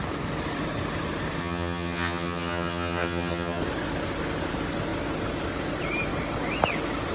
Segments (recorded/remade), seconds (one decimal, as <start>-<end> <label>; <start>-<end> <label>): 0.0-1.4 recorded; 1.4-3.6 remade; 3.6-7.1 recorded